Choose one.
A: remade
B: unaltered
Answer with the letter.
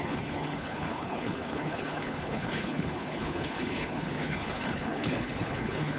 A